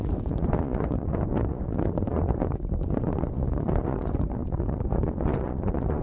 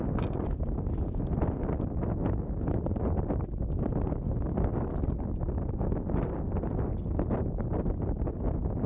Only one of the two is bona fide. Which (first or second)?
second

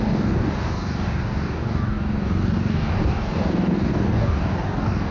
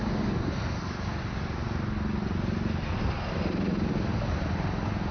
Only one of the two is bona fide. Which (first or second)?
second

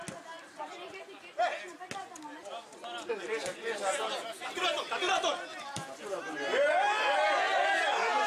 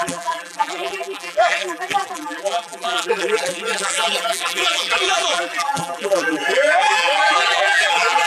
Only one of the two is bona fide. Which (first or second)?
first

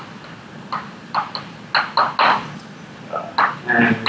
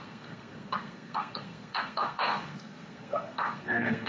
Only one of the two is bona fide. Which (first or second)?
first